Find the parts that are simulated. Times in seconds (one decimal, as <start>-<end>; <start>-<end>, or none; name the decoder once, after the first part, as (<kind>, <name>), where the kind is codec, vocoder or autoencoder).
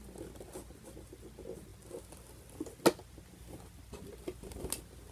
none